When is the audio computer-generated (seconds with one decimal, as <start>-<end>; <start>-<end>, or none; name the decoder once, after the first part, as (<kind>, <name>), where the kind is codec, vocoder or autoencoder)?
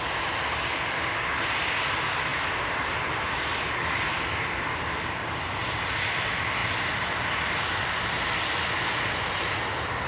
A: none